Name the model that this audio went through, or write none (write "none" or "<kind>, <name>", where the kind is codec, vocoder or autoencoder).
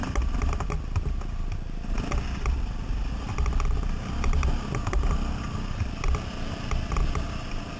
none